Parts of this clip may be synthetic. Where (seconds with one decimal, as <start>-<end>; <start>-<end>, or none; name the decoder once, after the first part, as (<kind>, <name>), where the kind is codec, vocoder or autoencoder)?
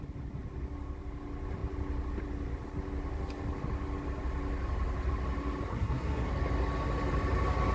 5.7-6.3 (codec, SNAC)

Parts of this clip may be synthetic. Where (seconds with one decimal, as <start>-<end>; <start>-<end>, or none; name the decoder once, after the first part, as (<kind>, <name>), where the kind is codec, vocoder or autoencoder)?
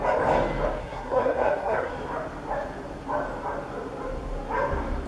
0.8-1.9 (codec, SNAC)